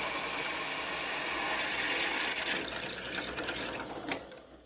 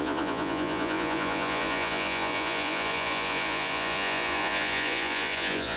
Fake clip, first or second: second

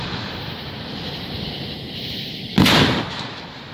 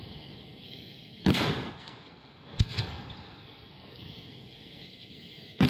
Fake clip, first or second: second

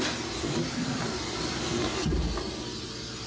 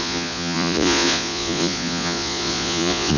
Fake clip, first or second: second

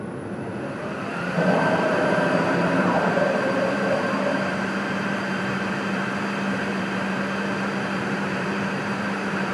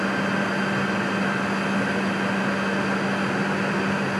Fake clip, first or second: first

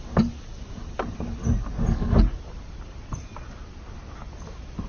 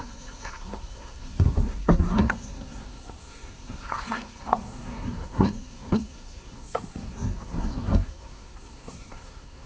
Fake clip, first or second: second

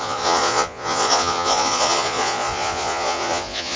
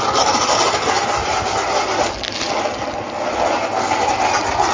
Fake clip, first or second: first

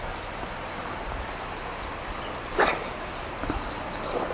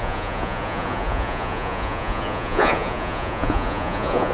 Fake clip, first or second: second